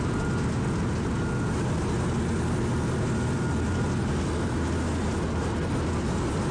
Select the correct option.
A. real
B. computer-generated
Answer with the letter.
A